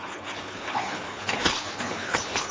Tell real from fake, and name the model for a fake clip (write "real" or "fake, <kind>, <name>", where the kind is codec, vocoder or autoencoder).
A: fake, codec, HILCodec